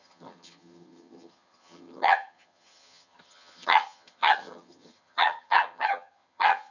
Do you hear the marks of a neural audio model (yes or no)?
yes